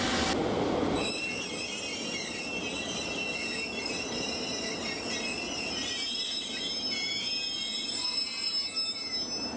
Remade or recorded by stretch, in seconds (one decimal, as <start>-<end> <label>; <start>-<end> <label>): 0.0-9.6 recorded